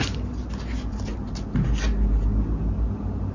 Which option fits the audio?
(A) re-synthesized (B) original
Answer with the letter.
B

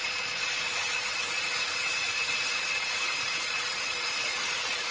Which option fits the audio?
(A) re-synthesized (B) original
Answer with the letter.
A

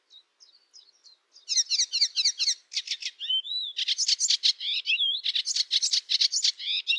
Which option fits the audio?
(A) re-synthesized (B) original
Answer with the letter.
B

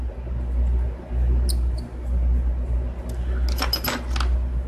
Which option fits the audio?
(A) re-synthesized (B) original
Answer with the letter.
B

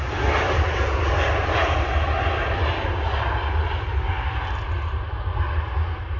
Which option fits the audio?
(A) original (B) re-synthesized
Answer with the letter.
A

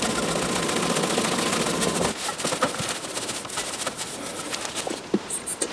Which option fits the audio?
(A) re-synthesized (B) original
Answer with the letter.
B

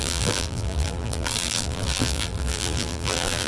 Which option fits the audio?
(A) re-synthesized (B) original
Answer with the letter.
A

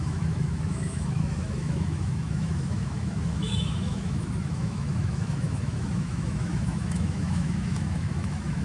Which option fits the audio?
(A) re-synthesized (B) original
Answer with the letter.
A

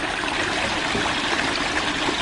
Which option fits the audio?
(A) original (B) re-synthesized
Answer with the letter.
B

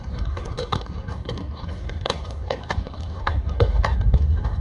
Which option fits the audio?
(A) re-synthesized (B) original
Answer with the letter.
A